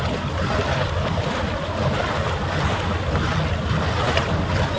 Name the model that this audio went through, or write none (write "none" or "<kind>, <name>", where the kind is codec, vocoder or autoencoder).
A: none